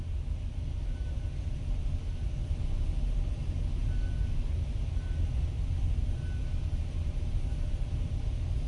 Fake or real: real